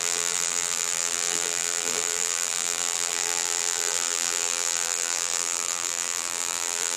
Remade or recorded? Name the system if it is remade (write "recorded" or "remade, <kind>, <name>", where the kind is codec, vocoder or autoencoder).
remade, vocoder, BigVGAN v2